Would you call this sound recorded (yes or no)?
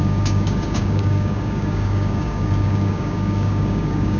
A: no